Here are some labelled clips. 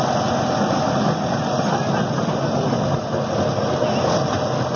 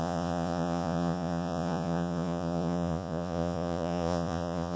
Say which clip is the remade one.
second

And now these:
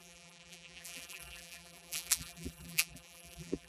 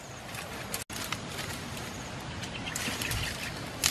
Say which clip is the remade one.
first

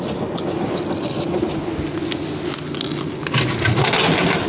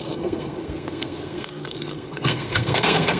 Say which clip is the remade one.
second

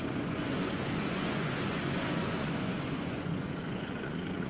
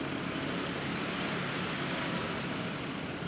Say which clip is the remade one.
first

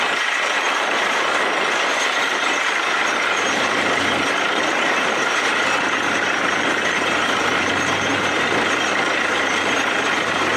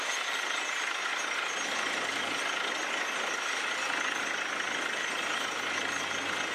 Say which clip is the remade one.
first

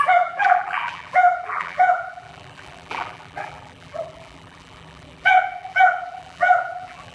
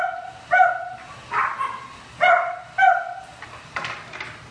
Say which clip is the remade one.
first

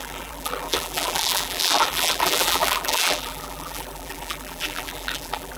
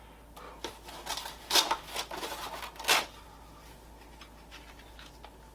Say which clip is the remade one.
first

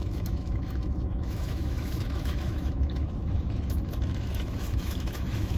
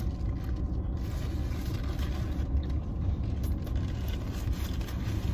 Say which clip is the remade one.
first